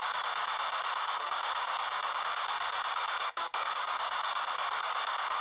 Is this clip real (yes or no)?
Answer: no